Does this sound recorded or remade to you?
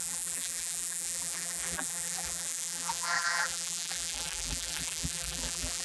remade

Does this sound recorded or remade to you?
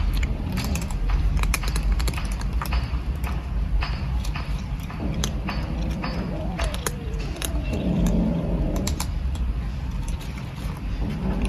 remade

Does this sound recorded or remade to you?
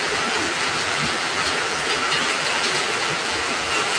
remade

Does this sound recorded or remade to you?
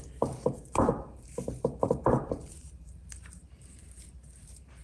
remade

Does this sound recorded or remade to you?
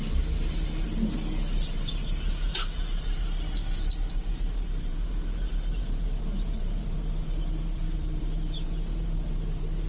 remade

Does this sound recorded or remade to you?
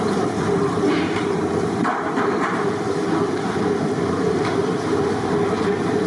remade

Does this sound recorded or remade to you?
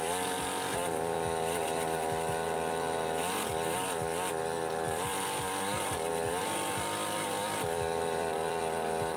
remade